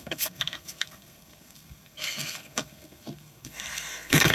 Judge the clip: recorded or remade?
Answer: remade